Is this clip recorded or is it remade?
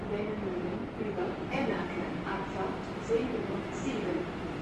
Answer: recorded